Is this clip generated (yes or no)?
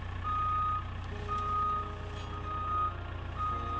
no